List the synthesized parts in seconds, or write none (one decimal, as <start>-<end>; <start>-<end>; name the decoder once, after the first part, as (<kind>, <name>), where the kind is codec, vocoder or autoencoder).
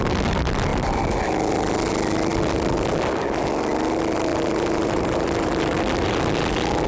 4.3-5.5 (vocoder, BigVGAN v2)